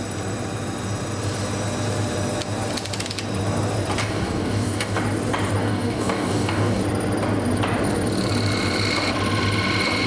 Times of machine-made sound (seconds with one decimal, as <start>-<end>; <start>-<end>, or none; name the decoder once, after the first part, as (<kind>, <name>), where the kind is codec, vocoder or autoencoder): 4.0-5.0 (codec, DAC); 5.6-6.8

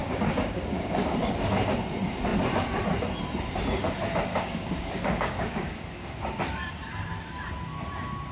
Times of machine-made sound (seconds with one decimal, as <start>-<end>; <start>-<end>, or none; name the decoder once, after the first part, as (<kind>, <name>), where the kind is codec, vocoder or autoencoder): 0.0-1.7 (codec, DAC); 4.3-6.4